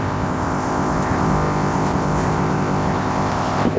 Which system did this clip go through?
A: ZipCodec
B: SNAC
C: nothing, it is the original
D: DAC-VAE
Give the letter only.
A